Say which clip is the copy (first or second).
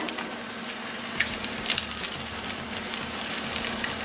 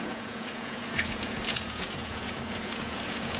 second